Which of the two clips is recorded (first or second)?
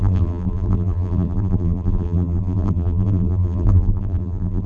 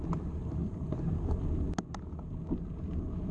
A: second